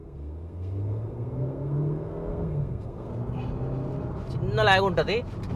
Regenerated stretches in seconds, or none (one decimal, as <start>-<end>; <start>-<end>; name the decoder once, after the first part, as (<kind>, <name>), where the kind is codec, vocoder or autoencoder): 0.0-3.1 (codec, SNAC)